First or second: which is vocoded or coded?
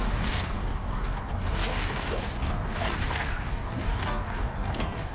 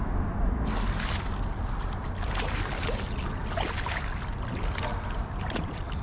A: first